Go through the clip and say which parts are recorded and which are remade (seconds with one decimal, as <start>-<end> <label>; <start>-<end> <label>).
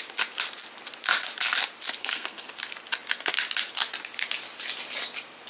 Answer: 0.0-2.0 recorded; 2.0-2.5 remade; 2.5-5.5 recorded